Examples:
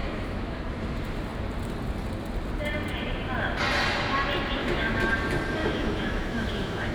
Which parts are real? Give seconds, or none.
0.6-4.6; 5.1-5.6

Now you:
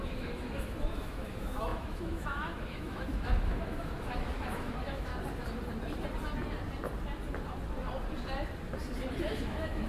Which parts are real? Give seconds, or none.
5.1-9.2

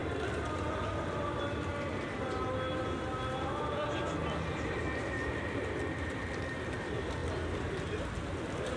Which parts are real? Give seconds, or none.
0.0-8.8